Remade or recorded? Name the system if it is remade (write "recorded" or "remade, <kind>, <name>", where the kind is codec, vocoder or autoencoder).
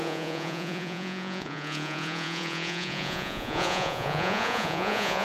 remade, vocoder, Vocos